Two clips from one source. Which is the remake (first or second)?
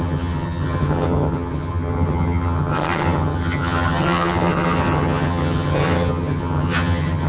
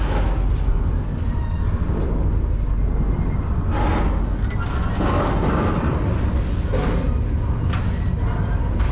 first